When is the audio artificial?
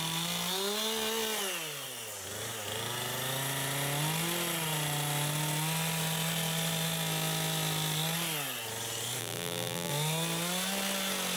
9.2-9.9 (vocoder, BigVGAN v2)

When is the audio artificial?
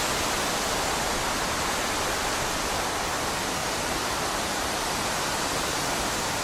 3.6-4.8 (vocoder, BigVGAN v2)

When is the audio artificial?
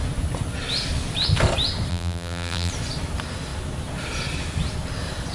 1.9-2.7 (vocoder, BigVGAN v2)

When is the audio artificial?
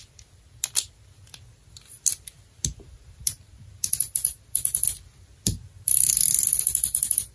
5.3-6.1 (vocoder, BigVGAN v2)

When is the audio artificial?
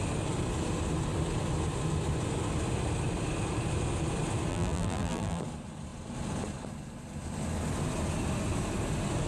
4.5-5.4 (vocoder, BigVGAN v2)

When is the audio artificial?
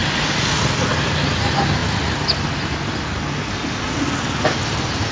none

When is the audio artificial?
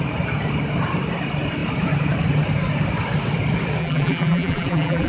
3.8-5.1 (vocoder, BigVGAN v2)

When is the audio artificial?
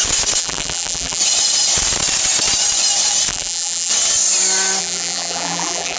0.4-1.2 (vocoder, BigVGAN v2); 3.3-3.9; 4.8-6.0